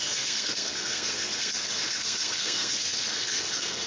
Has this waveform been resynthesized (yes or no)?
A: yes